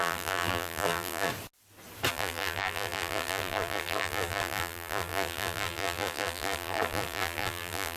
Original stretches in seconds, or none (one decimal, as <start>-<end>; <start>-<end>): 1.3-2.1